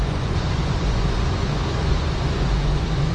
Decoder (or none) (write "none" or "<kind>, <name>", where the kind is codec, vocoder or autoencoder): vocoder, Vocos